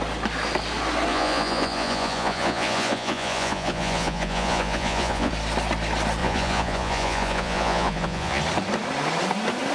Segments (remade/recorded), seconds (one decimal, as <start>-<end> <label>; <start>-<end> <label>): 0.0-1.1 recorded; 1.1-5.3 remade; 5.3-6.2 recorded; 6.2-8.4 remade; 8.4-9.7 recorded